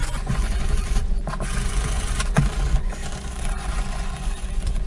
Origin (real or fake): fake